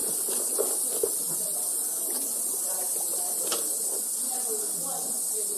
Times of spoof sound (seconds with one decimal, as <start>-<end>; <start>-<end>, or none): 0.0-0.5; 1.7-3.5